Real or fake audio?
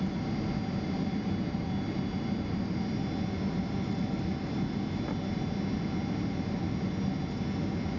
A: real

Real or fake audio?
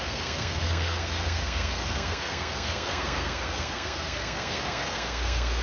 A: fake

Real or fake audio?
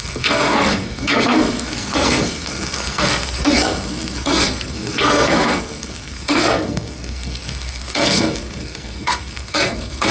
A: fake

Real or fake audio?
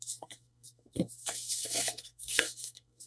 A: fake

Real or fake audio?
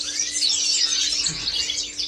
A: real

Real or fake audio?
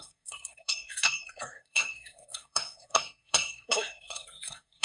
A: fake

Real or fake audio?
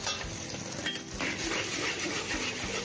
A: real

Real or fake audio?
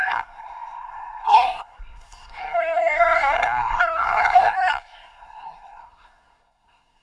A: fake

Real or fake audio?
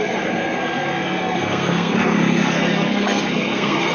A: fake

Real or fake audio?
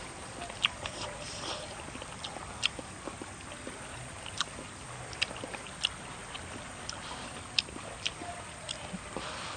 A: real